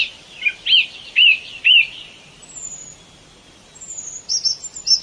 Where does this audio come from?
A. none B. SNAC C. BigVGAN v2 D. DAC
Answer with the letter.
A